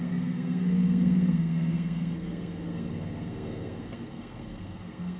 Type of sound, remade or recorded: remade